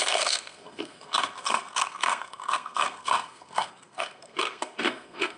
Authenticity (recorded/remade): remade